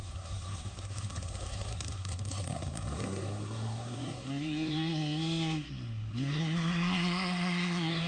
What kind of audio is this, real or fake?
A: fake